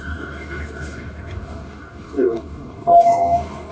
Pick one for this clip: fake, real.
fake